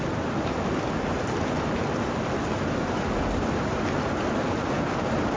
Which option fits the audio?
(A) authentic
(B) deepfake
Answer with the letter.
A